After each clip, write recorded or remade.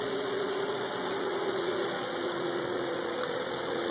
remade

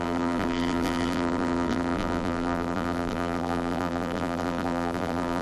remade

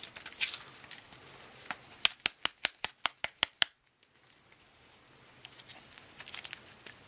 recorded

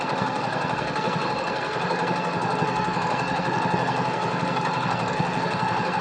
remade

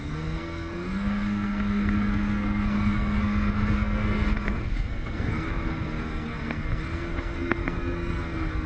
remade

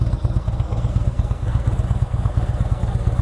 remade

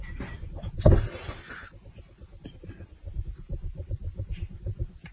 remade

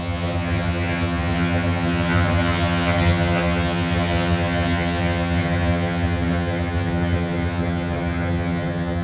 remade